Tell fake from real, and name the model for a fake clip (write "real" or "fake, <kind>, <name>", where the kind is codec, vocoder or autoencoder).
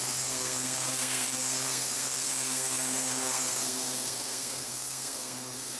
fake, codec, SNAC